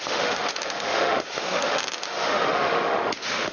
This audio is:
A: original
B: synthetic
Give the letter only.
B